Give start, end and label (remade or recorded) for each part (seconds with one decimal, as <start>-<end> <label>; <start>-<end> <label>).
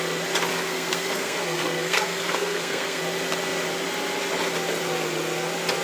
0.0-0.5 recorded; 0.5-3.0 remade; 3.0-5.8 recorded